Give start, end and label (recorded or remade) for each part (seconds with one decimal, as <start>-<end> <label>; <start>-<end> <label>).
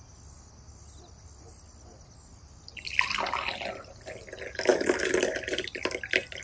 0.0-6.4 recorded